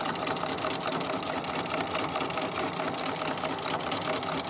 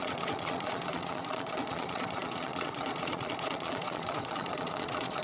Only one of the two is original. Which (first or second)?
first